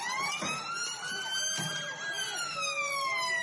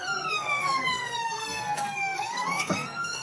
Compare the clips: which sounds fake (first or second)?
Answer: second